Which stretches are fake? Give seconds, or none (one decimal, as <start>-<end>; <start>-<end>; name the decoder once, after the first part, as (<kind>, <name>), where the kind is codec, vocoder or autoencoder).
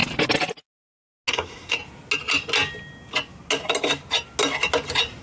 1.3-1.8 (codec, SNAC)